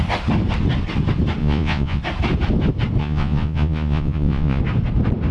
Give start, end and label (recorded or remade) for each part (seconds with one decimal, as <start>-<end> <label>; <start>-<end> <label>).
0.0-1.4 recorded; 1.4-2.0 remade; 2.0-3.0 recorded; 3.0-4.6 remade; 4.6-5.3 recorded